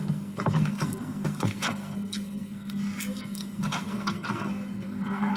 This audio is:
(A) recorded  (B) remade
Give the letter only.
B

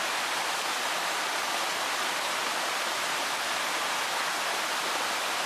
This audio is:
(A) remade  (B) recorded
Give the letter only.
B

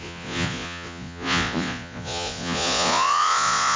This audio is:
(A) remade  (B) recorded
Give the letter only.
A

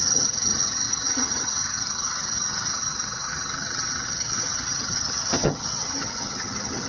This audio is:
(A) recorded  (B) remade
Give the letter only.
B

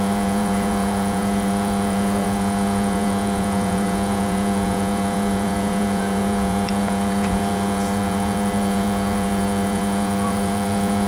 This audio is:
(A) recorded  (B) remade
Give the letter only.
B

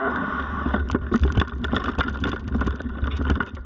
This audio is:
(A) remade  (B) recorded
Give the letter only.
B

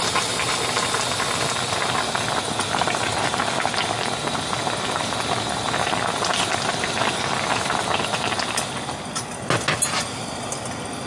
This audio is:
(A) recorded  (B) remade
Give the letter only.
A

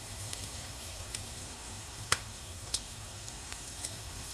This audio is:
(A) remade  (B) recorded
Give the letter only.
A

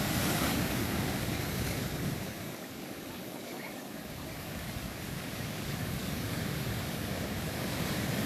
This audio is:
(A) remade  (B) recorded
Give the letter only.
A